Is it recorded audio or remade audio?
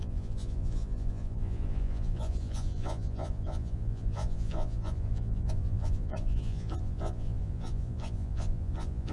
remade